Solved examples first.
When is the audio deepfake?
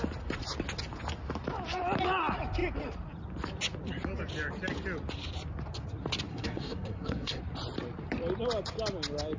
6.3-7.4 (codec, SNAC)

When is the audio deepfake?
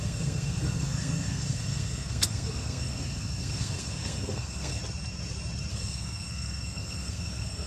0.0-4.8 (codec, SNAC); 5.7-7.7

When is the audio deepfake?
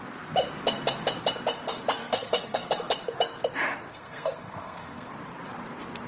2.0-2.7 (codec, SNAC); 3.9-5.1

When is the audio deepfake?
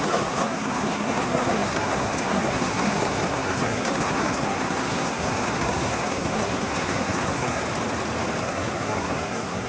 0.0-7.6 (codec, SNAC); 8.4-9.7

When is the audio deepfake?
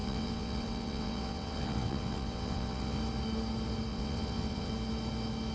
0.0-3.0 (vocoder, WaveNeXt); 3.9-4.7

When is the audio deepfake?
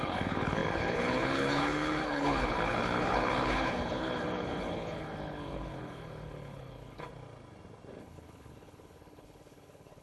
0.0-7.1 (codec, HILCodec); 8.0-10.0